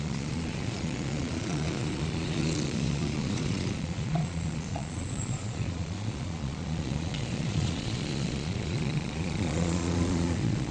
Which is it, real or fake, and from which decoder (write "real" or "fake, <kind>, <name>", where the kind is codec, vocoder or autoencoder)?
fake, vocoder, Vocos